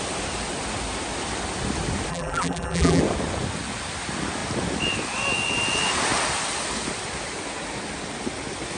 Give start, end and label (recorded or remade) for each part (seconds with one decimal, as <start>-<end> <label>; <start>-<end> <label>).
0.0-2.1 recorded; 2.1-3.0 remade; 3.0-8.8 recorded